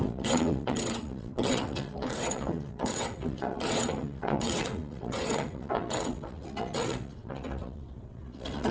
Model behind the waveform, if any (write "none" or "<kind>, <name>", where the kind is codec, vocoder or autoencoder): vocoder, WaveNeXt